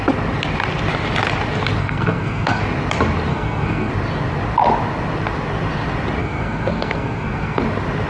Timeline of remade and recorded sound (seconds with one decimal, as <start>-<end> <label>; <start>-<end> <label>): 0.0-1.8 recorded; 1.8-2.6 remade; 2.6-3.3 recorded; 3.3-3.9 remade; 3.9-6.2 recorded; 6.2-7.6 remade; 7.6-8.1 recorded